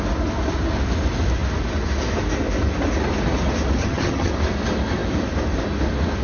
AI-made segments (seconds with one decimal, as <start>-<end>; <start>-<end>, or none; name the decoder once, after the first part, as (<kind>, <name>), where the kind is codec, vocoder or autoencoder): 3.8-4.3 (vocoder, HiFi-GAN)